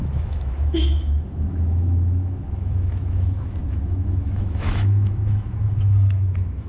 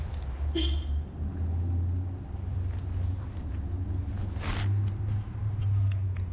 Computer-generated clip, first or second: first